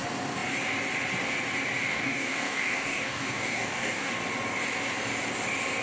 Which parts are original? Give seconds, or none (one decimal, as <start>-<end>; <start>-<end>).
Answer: 0.0-1.9; 4.1-5.8